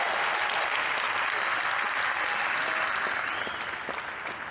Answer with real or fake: real